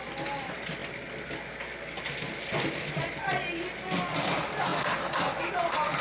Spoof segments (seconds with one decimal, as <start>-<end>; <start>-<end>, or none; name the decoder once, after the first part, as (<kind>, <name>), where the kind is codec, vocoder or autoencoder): none